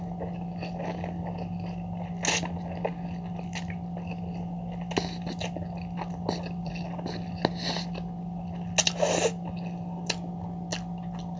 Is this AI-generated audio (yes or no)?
no